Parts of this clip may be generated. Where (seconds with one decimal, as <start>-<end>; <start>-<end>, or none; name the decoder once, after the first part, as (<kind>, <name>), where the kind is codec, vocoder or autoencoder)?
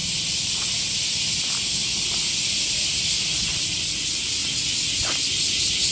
none